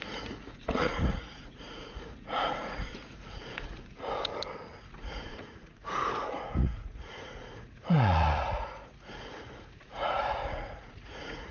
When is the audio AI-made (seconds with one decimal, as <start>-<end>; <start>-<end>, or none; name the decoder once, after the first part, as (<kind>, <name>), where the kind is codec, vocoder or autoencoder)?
0.0-4.3 (vocoder, Vocos); 4.8-11.5